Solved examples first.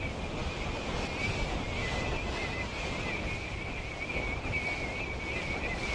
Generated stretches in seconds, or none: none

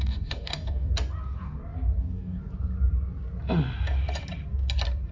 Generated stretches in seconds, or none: 0.0-0.9; 2.0-2.4

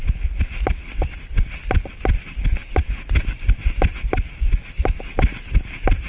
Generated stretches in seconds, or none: none

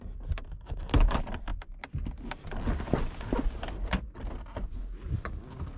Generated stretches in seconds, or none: none

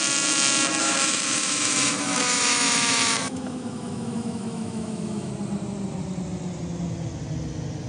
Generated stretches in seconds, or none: 0.8-5.3

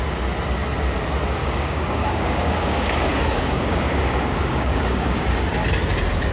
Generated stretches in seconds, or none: 1.4-5.2

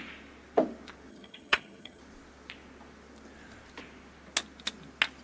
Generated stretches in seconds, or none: 1.1-2.0

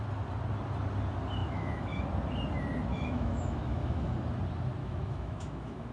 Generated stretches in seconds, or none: 1.4-2.0; 2.9-4.1; 4.8-5.9